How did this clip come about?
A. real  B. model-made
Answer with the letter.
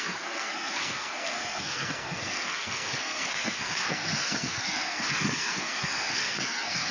B